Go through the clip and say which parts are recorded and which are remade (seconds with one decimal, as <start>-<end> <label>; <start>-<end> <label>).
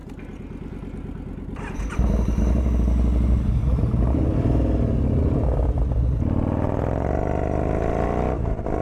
0.0-8.8 recorded